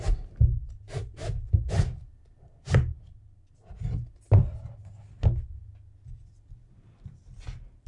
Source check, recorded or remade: recorded